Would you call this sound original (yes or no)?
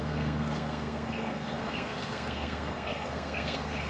no